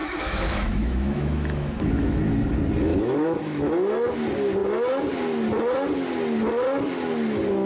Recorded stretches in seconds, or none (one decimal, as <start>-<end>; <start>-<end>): 2.2-2.9; 3.7-7.7